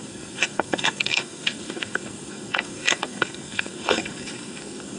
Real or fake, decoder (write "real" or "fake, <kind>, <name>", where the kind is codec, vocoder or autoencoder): fake, codec, SNAC